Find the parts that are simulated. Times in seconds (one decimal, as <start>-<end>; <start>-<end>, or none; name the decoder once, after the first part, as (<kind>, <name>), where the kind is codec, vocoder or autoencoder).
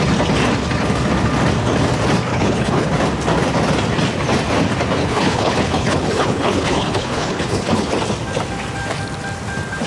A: 2.3-2.9 (codec, HILCodec); 5.0-7.9